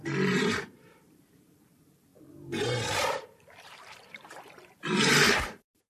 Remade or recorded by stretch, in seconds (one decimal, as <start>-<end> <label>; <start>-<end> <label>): 0.0-5.9 remade

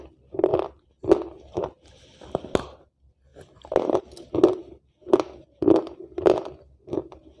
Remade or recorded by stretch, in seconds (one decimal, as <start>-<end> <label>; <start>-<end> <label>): 0.0-0.5 recorded; 0.5-1.0 remade; 1.0-7.4 recorded

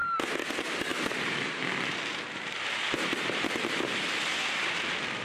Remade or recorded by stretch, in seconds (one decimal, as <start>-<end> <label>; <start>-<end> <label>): 0.0-0.5 recorded; 0.5-5.2 remade

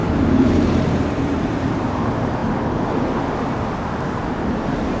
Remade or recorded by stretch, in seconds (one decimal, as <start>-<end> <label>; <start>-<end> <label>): 0.0-2.4 remade; 2.4-4.0 recorded; 4.0-5.0 remade

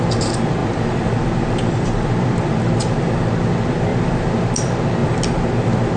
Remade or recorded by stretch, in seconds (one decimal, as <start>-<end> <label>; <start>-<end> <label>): 0.0-0.6 recorded; 0.6-3.3 remade; 3.3-3.9 recorded; 3.9-4.4 remade; 4.4-5.0 recorded; 5.0-6.0 remade

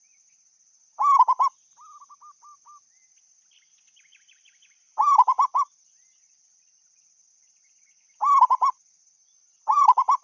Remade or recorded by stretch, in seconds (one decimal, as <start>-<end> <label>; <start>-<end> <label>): 0.0-9.3 recorded; 9.3-10.2 remade

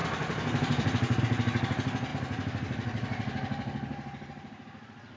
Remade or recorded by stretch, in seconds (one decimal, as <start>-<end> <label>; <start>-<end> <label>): 0.0-1.2 remade; 1.2-2.1 recorded; 2.1-5.2 remade